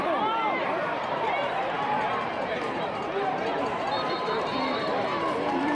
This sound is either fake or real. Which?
fake